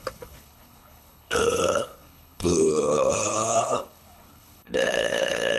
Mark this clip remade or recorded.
remade